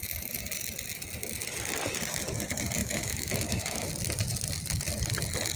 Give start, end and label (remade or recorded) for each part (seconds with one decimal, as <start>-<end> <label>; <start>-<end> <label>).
0.0-2.8 recorded; 2.8-3.9 remade; 3.9-5.6 recorded